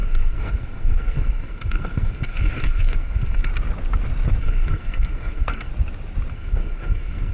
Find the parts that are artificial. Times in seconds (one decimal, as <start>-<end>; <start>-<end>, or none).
0.0-3.5; 4.4-5.7; 6.3-7.3